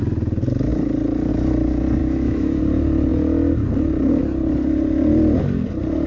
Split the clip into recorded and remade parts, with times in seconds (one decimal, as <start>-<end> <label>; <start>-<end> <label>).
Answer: 0.0-2.0 recorded; 2.0-2.6 remade; 2.6-6.1 recorded